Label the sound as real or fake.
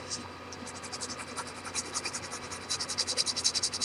real